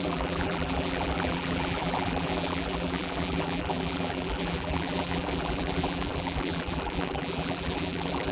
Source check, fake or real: fake